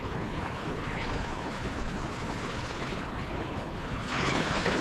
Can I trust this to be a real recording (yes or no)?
no